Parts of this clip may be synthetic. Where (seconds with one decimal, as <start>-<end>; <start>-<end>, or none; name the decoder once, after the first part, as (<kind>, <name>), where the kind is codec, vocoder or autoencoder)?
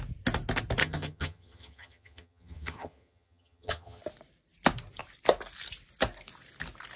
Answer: 0.8-4.0 (vocoder, HiFi-GAN)